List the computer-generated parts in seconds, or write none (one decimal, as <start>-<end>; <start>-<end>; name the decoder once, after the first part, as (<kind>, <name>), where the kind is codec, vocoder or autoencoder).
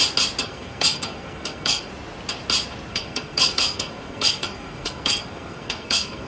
0.4-1.9 (codec, SNAC); 2.9-6.3